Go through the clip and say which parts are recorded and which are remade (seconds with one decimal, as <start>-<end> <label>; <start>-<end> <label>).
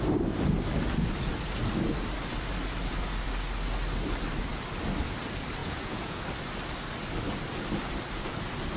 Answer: 0.0-5.6 recorded; 5.6-6.2 remade; 6.2-8.8 recorded